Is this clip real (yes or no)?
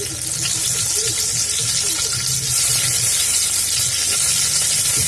yes